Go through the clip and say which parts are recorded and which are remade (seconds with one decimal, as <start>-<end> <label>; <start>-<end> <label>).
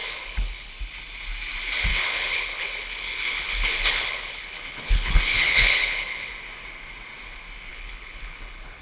0.0-0.7 remade; 0.7-1.9 recorded; 1.9-6.3 remade; 6.3-7.7 recorded; 7.7-8.8 remade